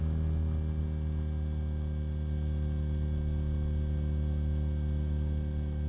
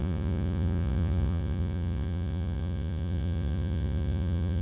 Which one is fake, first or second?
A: second